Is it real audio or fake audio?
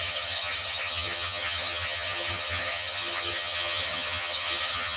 fake